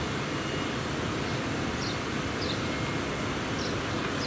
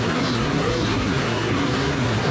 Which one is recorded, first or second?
first